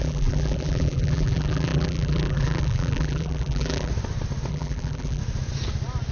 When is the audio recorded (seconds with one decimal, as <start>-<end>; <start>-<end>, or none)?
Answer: 3.9-4.5; 5.2-6.1